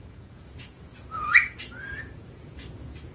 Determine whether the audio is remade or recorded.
remade